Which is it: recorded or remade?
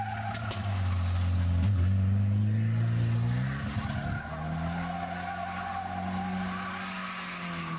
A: recorded